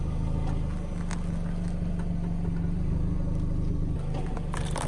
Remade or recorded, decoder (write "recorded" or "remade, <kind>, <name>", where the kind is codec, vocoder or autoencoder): recorded